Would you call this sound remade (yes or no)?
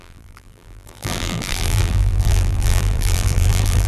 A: yes